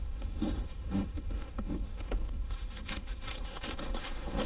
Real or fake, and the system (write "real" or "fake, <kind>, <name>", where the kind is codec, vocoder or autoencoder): fake, autoencoder, DAC-VAE